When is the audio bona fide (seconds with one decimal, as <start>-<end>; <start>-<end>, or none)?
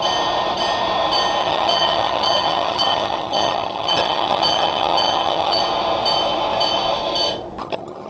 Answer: 0.0-1.4; 5.6-7.6